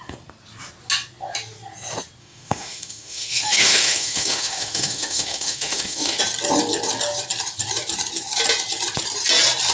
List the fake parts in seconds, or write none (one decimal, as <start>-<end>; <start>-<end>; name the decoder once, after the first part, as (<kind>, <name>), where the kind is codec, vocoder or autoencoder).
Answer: 2.2-6.2 (autoencoder, DAC-VAE)